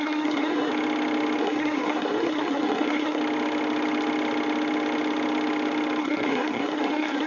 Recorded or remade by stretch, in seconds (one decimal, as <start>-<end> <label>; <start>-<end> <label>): 0.0-0.7 remade; 0.7-1.4 recorded; 1.4-3.2 remade; 3.2-6.0 recorded; 6.0-7.3 remade